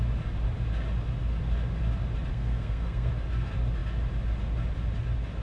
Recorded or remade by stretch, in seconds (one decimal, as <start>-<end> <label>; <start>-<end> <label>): 0.0-2.3 recorded; 2.3-3.1 remade; 3.1-5.4 recorded